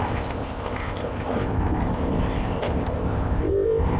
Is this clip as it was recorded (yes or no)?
no